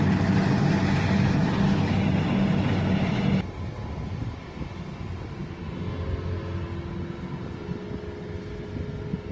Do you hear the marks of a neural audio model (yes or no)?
no